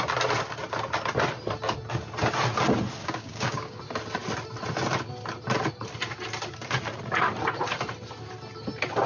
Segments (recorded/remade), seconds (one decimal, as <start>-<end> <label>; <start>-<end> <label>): 0.0-3.0 recorded; 3.0-3.8 remade; 3.8-9.1 recorded